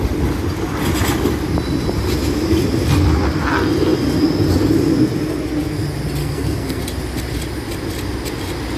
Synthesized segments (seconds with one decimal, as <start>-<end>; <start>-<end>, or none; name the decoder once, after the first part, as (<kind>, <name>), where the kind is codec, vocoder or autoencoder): 6.2-6.8 (codec, SNAC)